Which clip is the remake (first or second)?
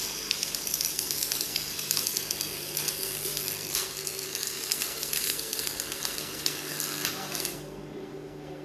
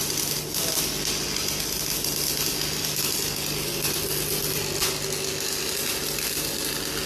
first